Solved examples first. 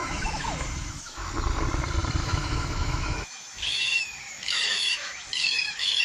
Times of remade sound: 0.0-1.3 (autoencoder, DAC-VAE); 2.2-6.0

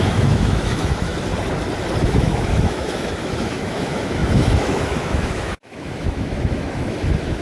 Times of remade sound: 0.0-1.1 (autoencoder, DAC-VAE); 2.0-7.4